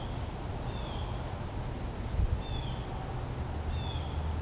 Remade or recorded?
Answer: recorded